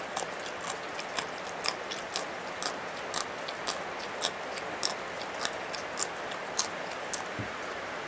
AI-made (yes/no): no